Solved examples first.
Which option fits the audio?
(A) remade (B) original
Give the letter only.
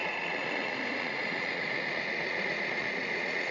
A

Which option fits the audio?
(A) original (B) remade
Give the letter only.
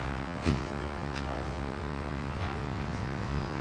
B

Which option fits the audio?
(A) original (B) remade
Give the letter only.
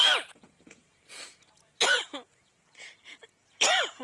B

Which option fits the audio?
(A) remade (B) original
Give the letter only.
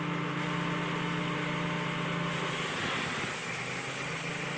B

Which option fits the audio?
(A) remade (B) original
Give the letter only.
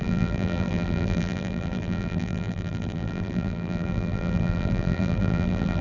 A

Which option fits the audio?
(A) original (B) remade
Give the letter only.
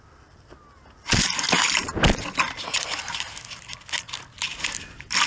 A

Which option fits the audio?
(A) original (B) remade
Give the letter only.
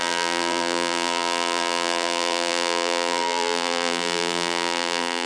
B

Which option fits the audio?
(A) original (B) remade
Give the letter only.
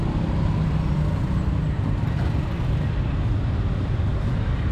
A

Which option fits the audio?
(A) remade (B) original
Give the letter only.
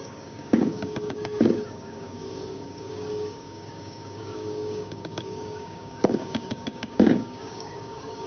A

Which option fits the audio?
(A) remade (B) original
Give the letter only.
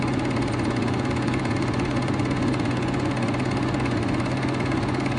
A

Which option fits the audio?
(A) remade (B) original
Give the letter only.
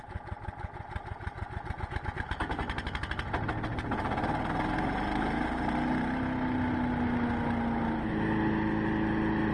B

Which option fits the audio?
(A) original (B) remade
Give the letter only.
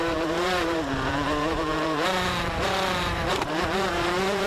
B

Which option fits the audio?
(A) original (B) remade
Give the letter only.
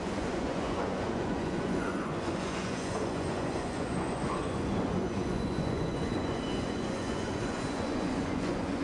B